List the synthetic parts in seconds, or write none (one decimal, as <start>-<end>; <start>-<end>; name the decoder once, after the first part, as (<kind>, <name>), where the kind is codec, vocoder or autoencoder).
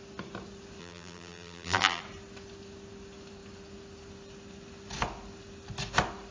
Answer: 0.8-2.0 (vocoder, BigVGAN v2)